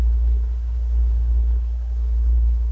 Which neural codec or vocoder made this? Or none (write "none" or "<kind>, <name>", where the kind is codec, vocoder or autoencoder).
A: codec, SNAC